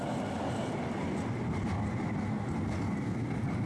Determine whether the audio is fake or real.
fake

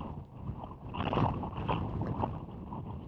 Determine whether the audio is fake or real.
fake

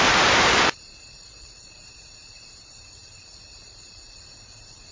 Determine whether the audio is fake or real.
fake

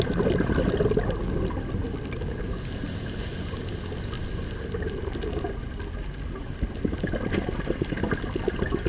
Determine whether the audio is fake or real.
real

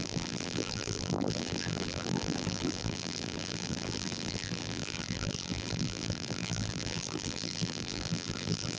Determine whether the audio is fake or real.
fake